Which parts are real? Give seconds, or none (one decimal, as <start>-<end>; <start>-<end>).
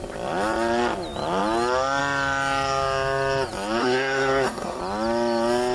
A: 0.0-3.8; 4.8-5.7